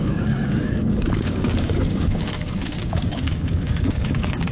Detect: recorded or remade remade